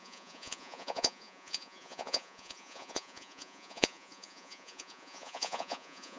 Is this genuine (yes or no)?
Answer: no